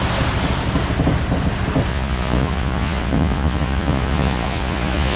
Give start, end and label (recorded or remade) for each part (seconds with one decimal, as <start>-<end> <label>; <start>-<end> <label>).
0.0-1.9 recorded; 1.9-5.2 remade